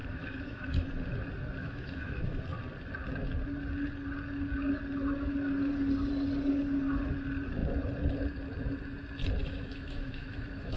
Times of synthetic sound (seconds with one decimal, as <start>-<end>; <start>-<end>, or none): 0.0-0.9; 1.6-2.4; 9.4-10.8